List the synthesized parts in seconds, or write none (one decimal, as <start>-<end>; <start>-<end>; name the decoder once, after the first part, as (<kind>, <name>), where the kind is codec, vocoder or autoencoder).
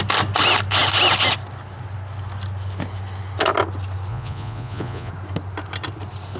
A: 4.1-5.1 (vocoder, Vocos)